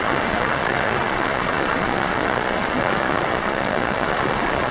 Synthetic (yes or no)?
yes